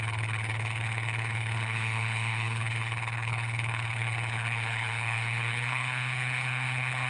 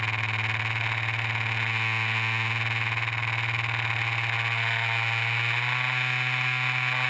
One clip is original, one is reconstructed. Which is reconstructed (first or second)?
first